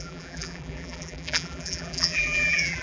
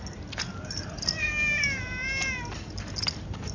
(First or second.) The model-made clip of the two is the first